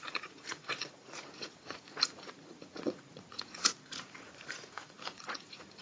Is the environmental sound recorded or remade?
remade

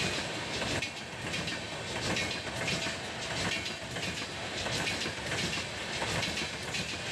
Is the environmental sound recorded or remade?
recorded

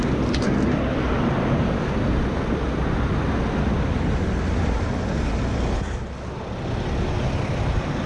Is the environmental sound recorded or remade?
recorded